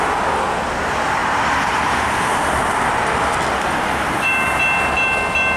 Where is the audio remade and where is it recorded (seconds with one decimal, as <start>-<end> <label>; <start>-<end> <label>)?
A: 0.0-1.2 recorded; 1.2-4.6 remade; 4.6-5.6 recorded